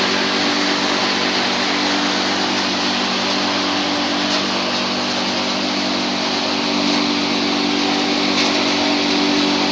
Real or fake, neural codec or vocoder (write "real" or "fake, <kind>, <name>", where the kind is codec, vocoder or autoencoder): real